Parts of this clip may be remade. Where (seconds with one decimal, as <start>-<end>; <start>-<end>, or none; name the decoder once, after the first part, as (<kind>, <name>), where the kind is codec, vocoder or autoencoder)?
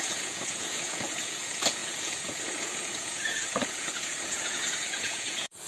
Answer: 0.0-5.7 (vocoder, Vocos)